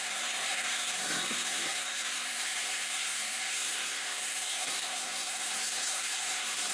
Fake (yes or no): yes